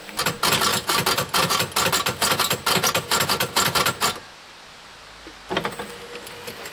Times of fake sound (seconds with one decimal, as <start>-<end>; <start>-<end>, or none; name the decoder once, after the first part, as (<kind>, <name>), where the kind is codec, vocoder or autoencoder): 0.7-1.5 (vocoder, BigVGAN v2)